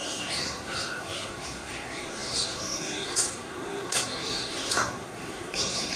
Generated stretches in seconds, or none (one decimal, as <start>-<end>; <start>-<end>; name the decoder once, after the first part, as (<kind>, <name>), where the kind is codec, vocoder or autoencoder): 0.0-6.0 (codec, SNAC)